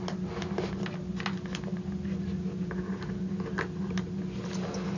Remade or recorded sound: recorded